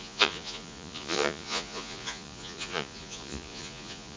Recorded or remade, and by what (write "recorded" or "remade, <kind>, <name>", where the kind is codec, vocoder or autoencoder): remade, vocoder, Vocos